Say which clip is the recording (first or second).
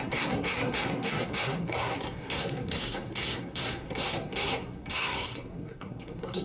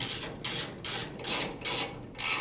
second